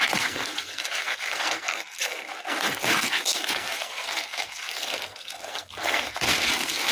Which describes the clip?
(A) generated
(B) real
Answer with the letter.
A